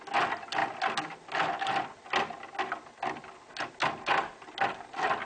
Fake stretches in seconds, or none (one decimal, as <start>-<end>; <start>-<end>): none